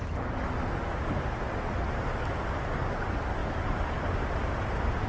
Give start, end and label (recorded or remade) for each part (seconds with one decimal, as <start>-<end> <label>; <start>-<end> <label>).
0.0-3.4 recorded; 3.4-4.5 remade; 4.5-5.1 recorded